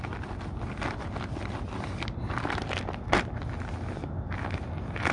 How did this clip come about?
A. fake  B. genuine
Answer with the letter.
B